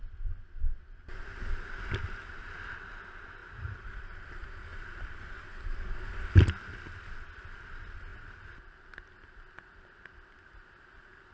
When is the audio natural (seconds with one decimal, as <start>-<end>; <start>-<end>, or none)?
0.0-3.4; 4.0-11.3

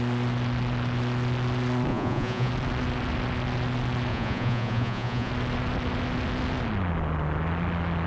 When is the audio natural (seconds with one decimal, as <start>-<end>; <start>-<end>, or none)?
0.0-1.9; 2.5-4.1; 5.3-8.1

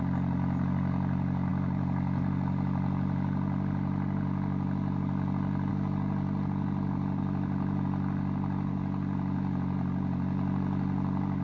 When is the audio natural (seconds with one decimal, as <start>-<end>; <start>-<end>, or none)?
0.0-11.4

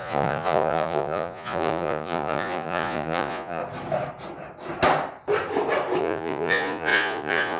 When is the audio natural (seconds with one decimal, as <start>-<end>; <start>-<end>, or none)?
3.6-6.0

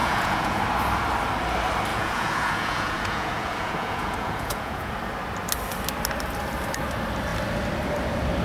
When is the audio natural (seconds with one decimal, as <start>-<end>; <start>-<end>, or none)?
0.6-1.9; 4.9-8.4

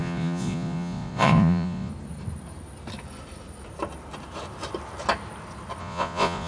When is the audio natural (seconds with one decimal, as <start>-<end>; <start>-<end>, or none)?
1.9-5.8

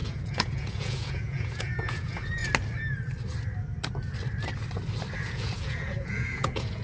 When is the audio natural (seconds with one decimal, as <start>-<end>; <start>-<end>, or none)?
2.4-5.2